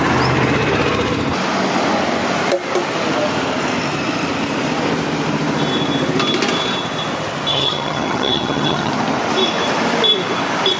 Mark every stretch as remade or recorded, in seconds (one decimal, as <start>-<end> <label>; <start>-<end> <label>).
0.0-7.5 recorded; 7.5-8.9 remade; 8.9-10.8 recorded